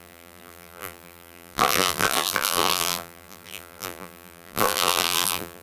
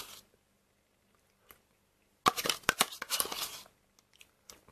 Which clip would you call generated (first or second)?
first